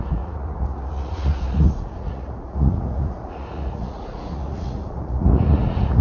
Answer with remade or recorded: remade